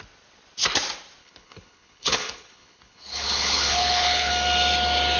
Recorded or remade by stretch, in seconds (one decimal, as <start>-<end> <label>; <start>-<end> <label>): 0.0-1.2 recorded; 1.2-4.3 remade; 4.3-5.2 recorded